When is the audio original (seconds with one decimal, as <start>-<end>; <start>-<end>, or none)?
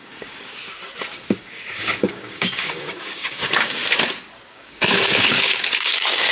0.6-1.4; 3.8-4.5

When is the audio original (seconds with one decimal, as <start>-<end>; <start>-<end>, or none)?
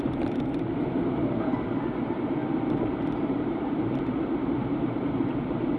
2.4-3.3